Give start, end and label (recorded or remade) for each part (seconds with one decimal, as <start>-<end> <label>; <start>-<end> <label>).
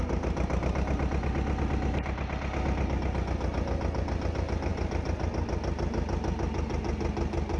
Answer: 0.0-7.6 recorded